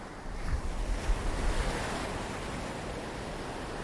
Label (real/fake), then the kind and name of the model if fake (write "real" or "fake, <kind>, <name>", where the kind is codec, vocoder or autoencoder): real